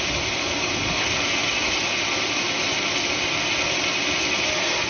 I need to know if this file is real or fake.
real